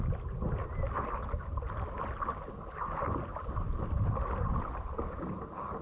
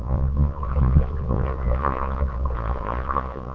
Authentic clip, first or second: first